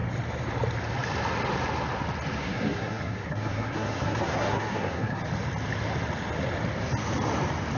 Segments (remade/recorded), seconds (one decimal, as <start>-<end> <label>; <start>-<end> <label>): 0.0-2.4 recorded; 2.4-5.2 remade; 5.2-7.8 recorded